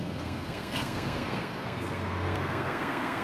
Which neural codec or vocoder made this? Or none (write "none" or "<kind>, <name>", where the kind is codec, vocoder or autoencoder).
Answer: codec, SNAC